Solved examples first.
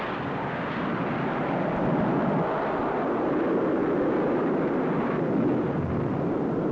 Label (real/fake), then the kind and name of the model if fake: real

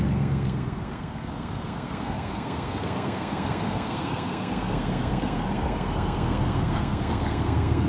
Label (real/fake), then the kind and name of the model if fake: fake, codec, SNAC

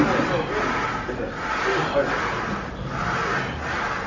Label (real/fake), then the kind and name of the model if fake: real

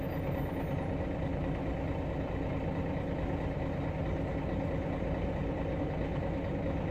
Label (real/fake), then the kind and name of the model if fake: real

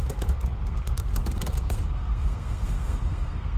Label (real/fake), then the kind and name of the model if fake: fake, codec, SNAC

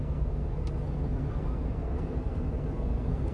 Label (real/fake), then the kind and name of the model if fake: fake, codec, SNAC